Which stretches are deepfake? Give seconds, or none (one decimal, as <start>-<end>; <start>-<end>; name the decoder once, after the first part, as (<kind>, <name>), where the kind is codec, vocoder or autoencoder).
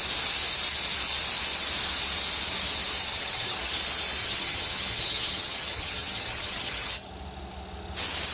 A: 3.1-3.8 (vocoder, HiFi-GAN); 4.2-7.1